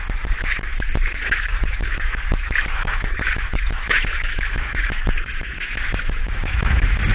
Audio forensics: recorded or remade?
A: remade